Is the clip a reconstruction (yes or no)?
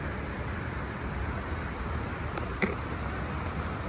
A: no